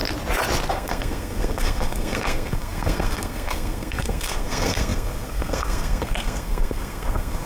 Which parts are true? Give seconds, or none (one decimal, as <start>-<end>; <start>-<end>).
0.0-0.7